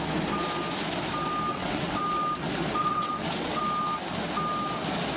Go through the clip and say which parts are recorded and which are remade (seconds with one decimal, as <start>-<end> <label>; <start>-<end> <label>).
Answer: 0.0-1.5 recorded; 1.5-2.0 remade; 2.0-2.8 recorded; 2.8-3.6 remade; 3.6-5.2 recorded